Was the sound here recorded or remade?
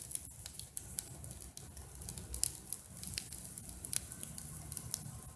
recorded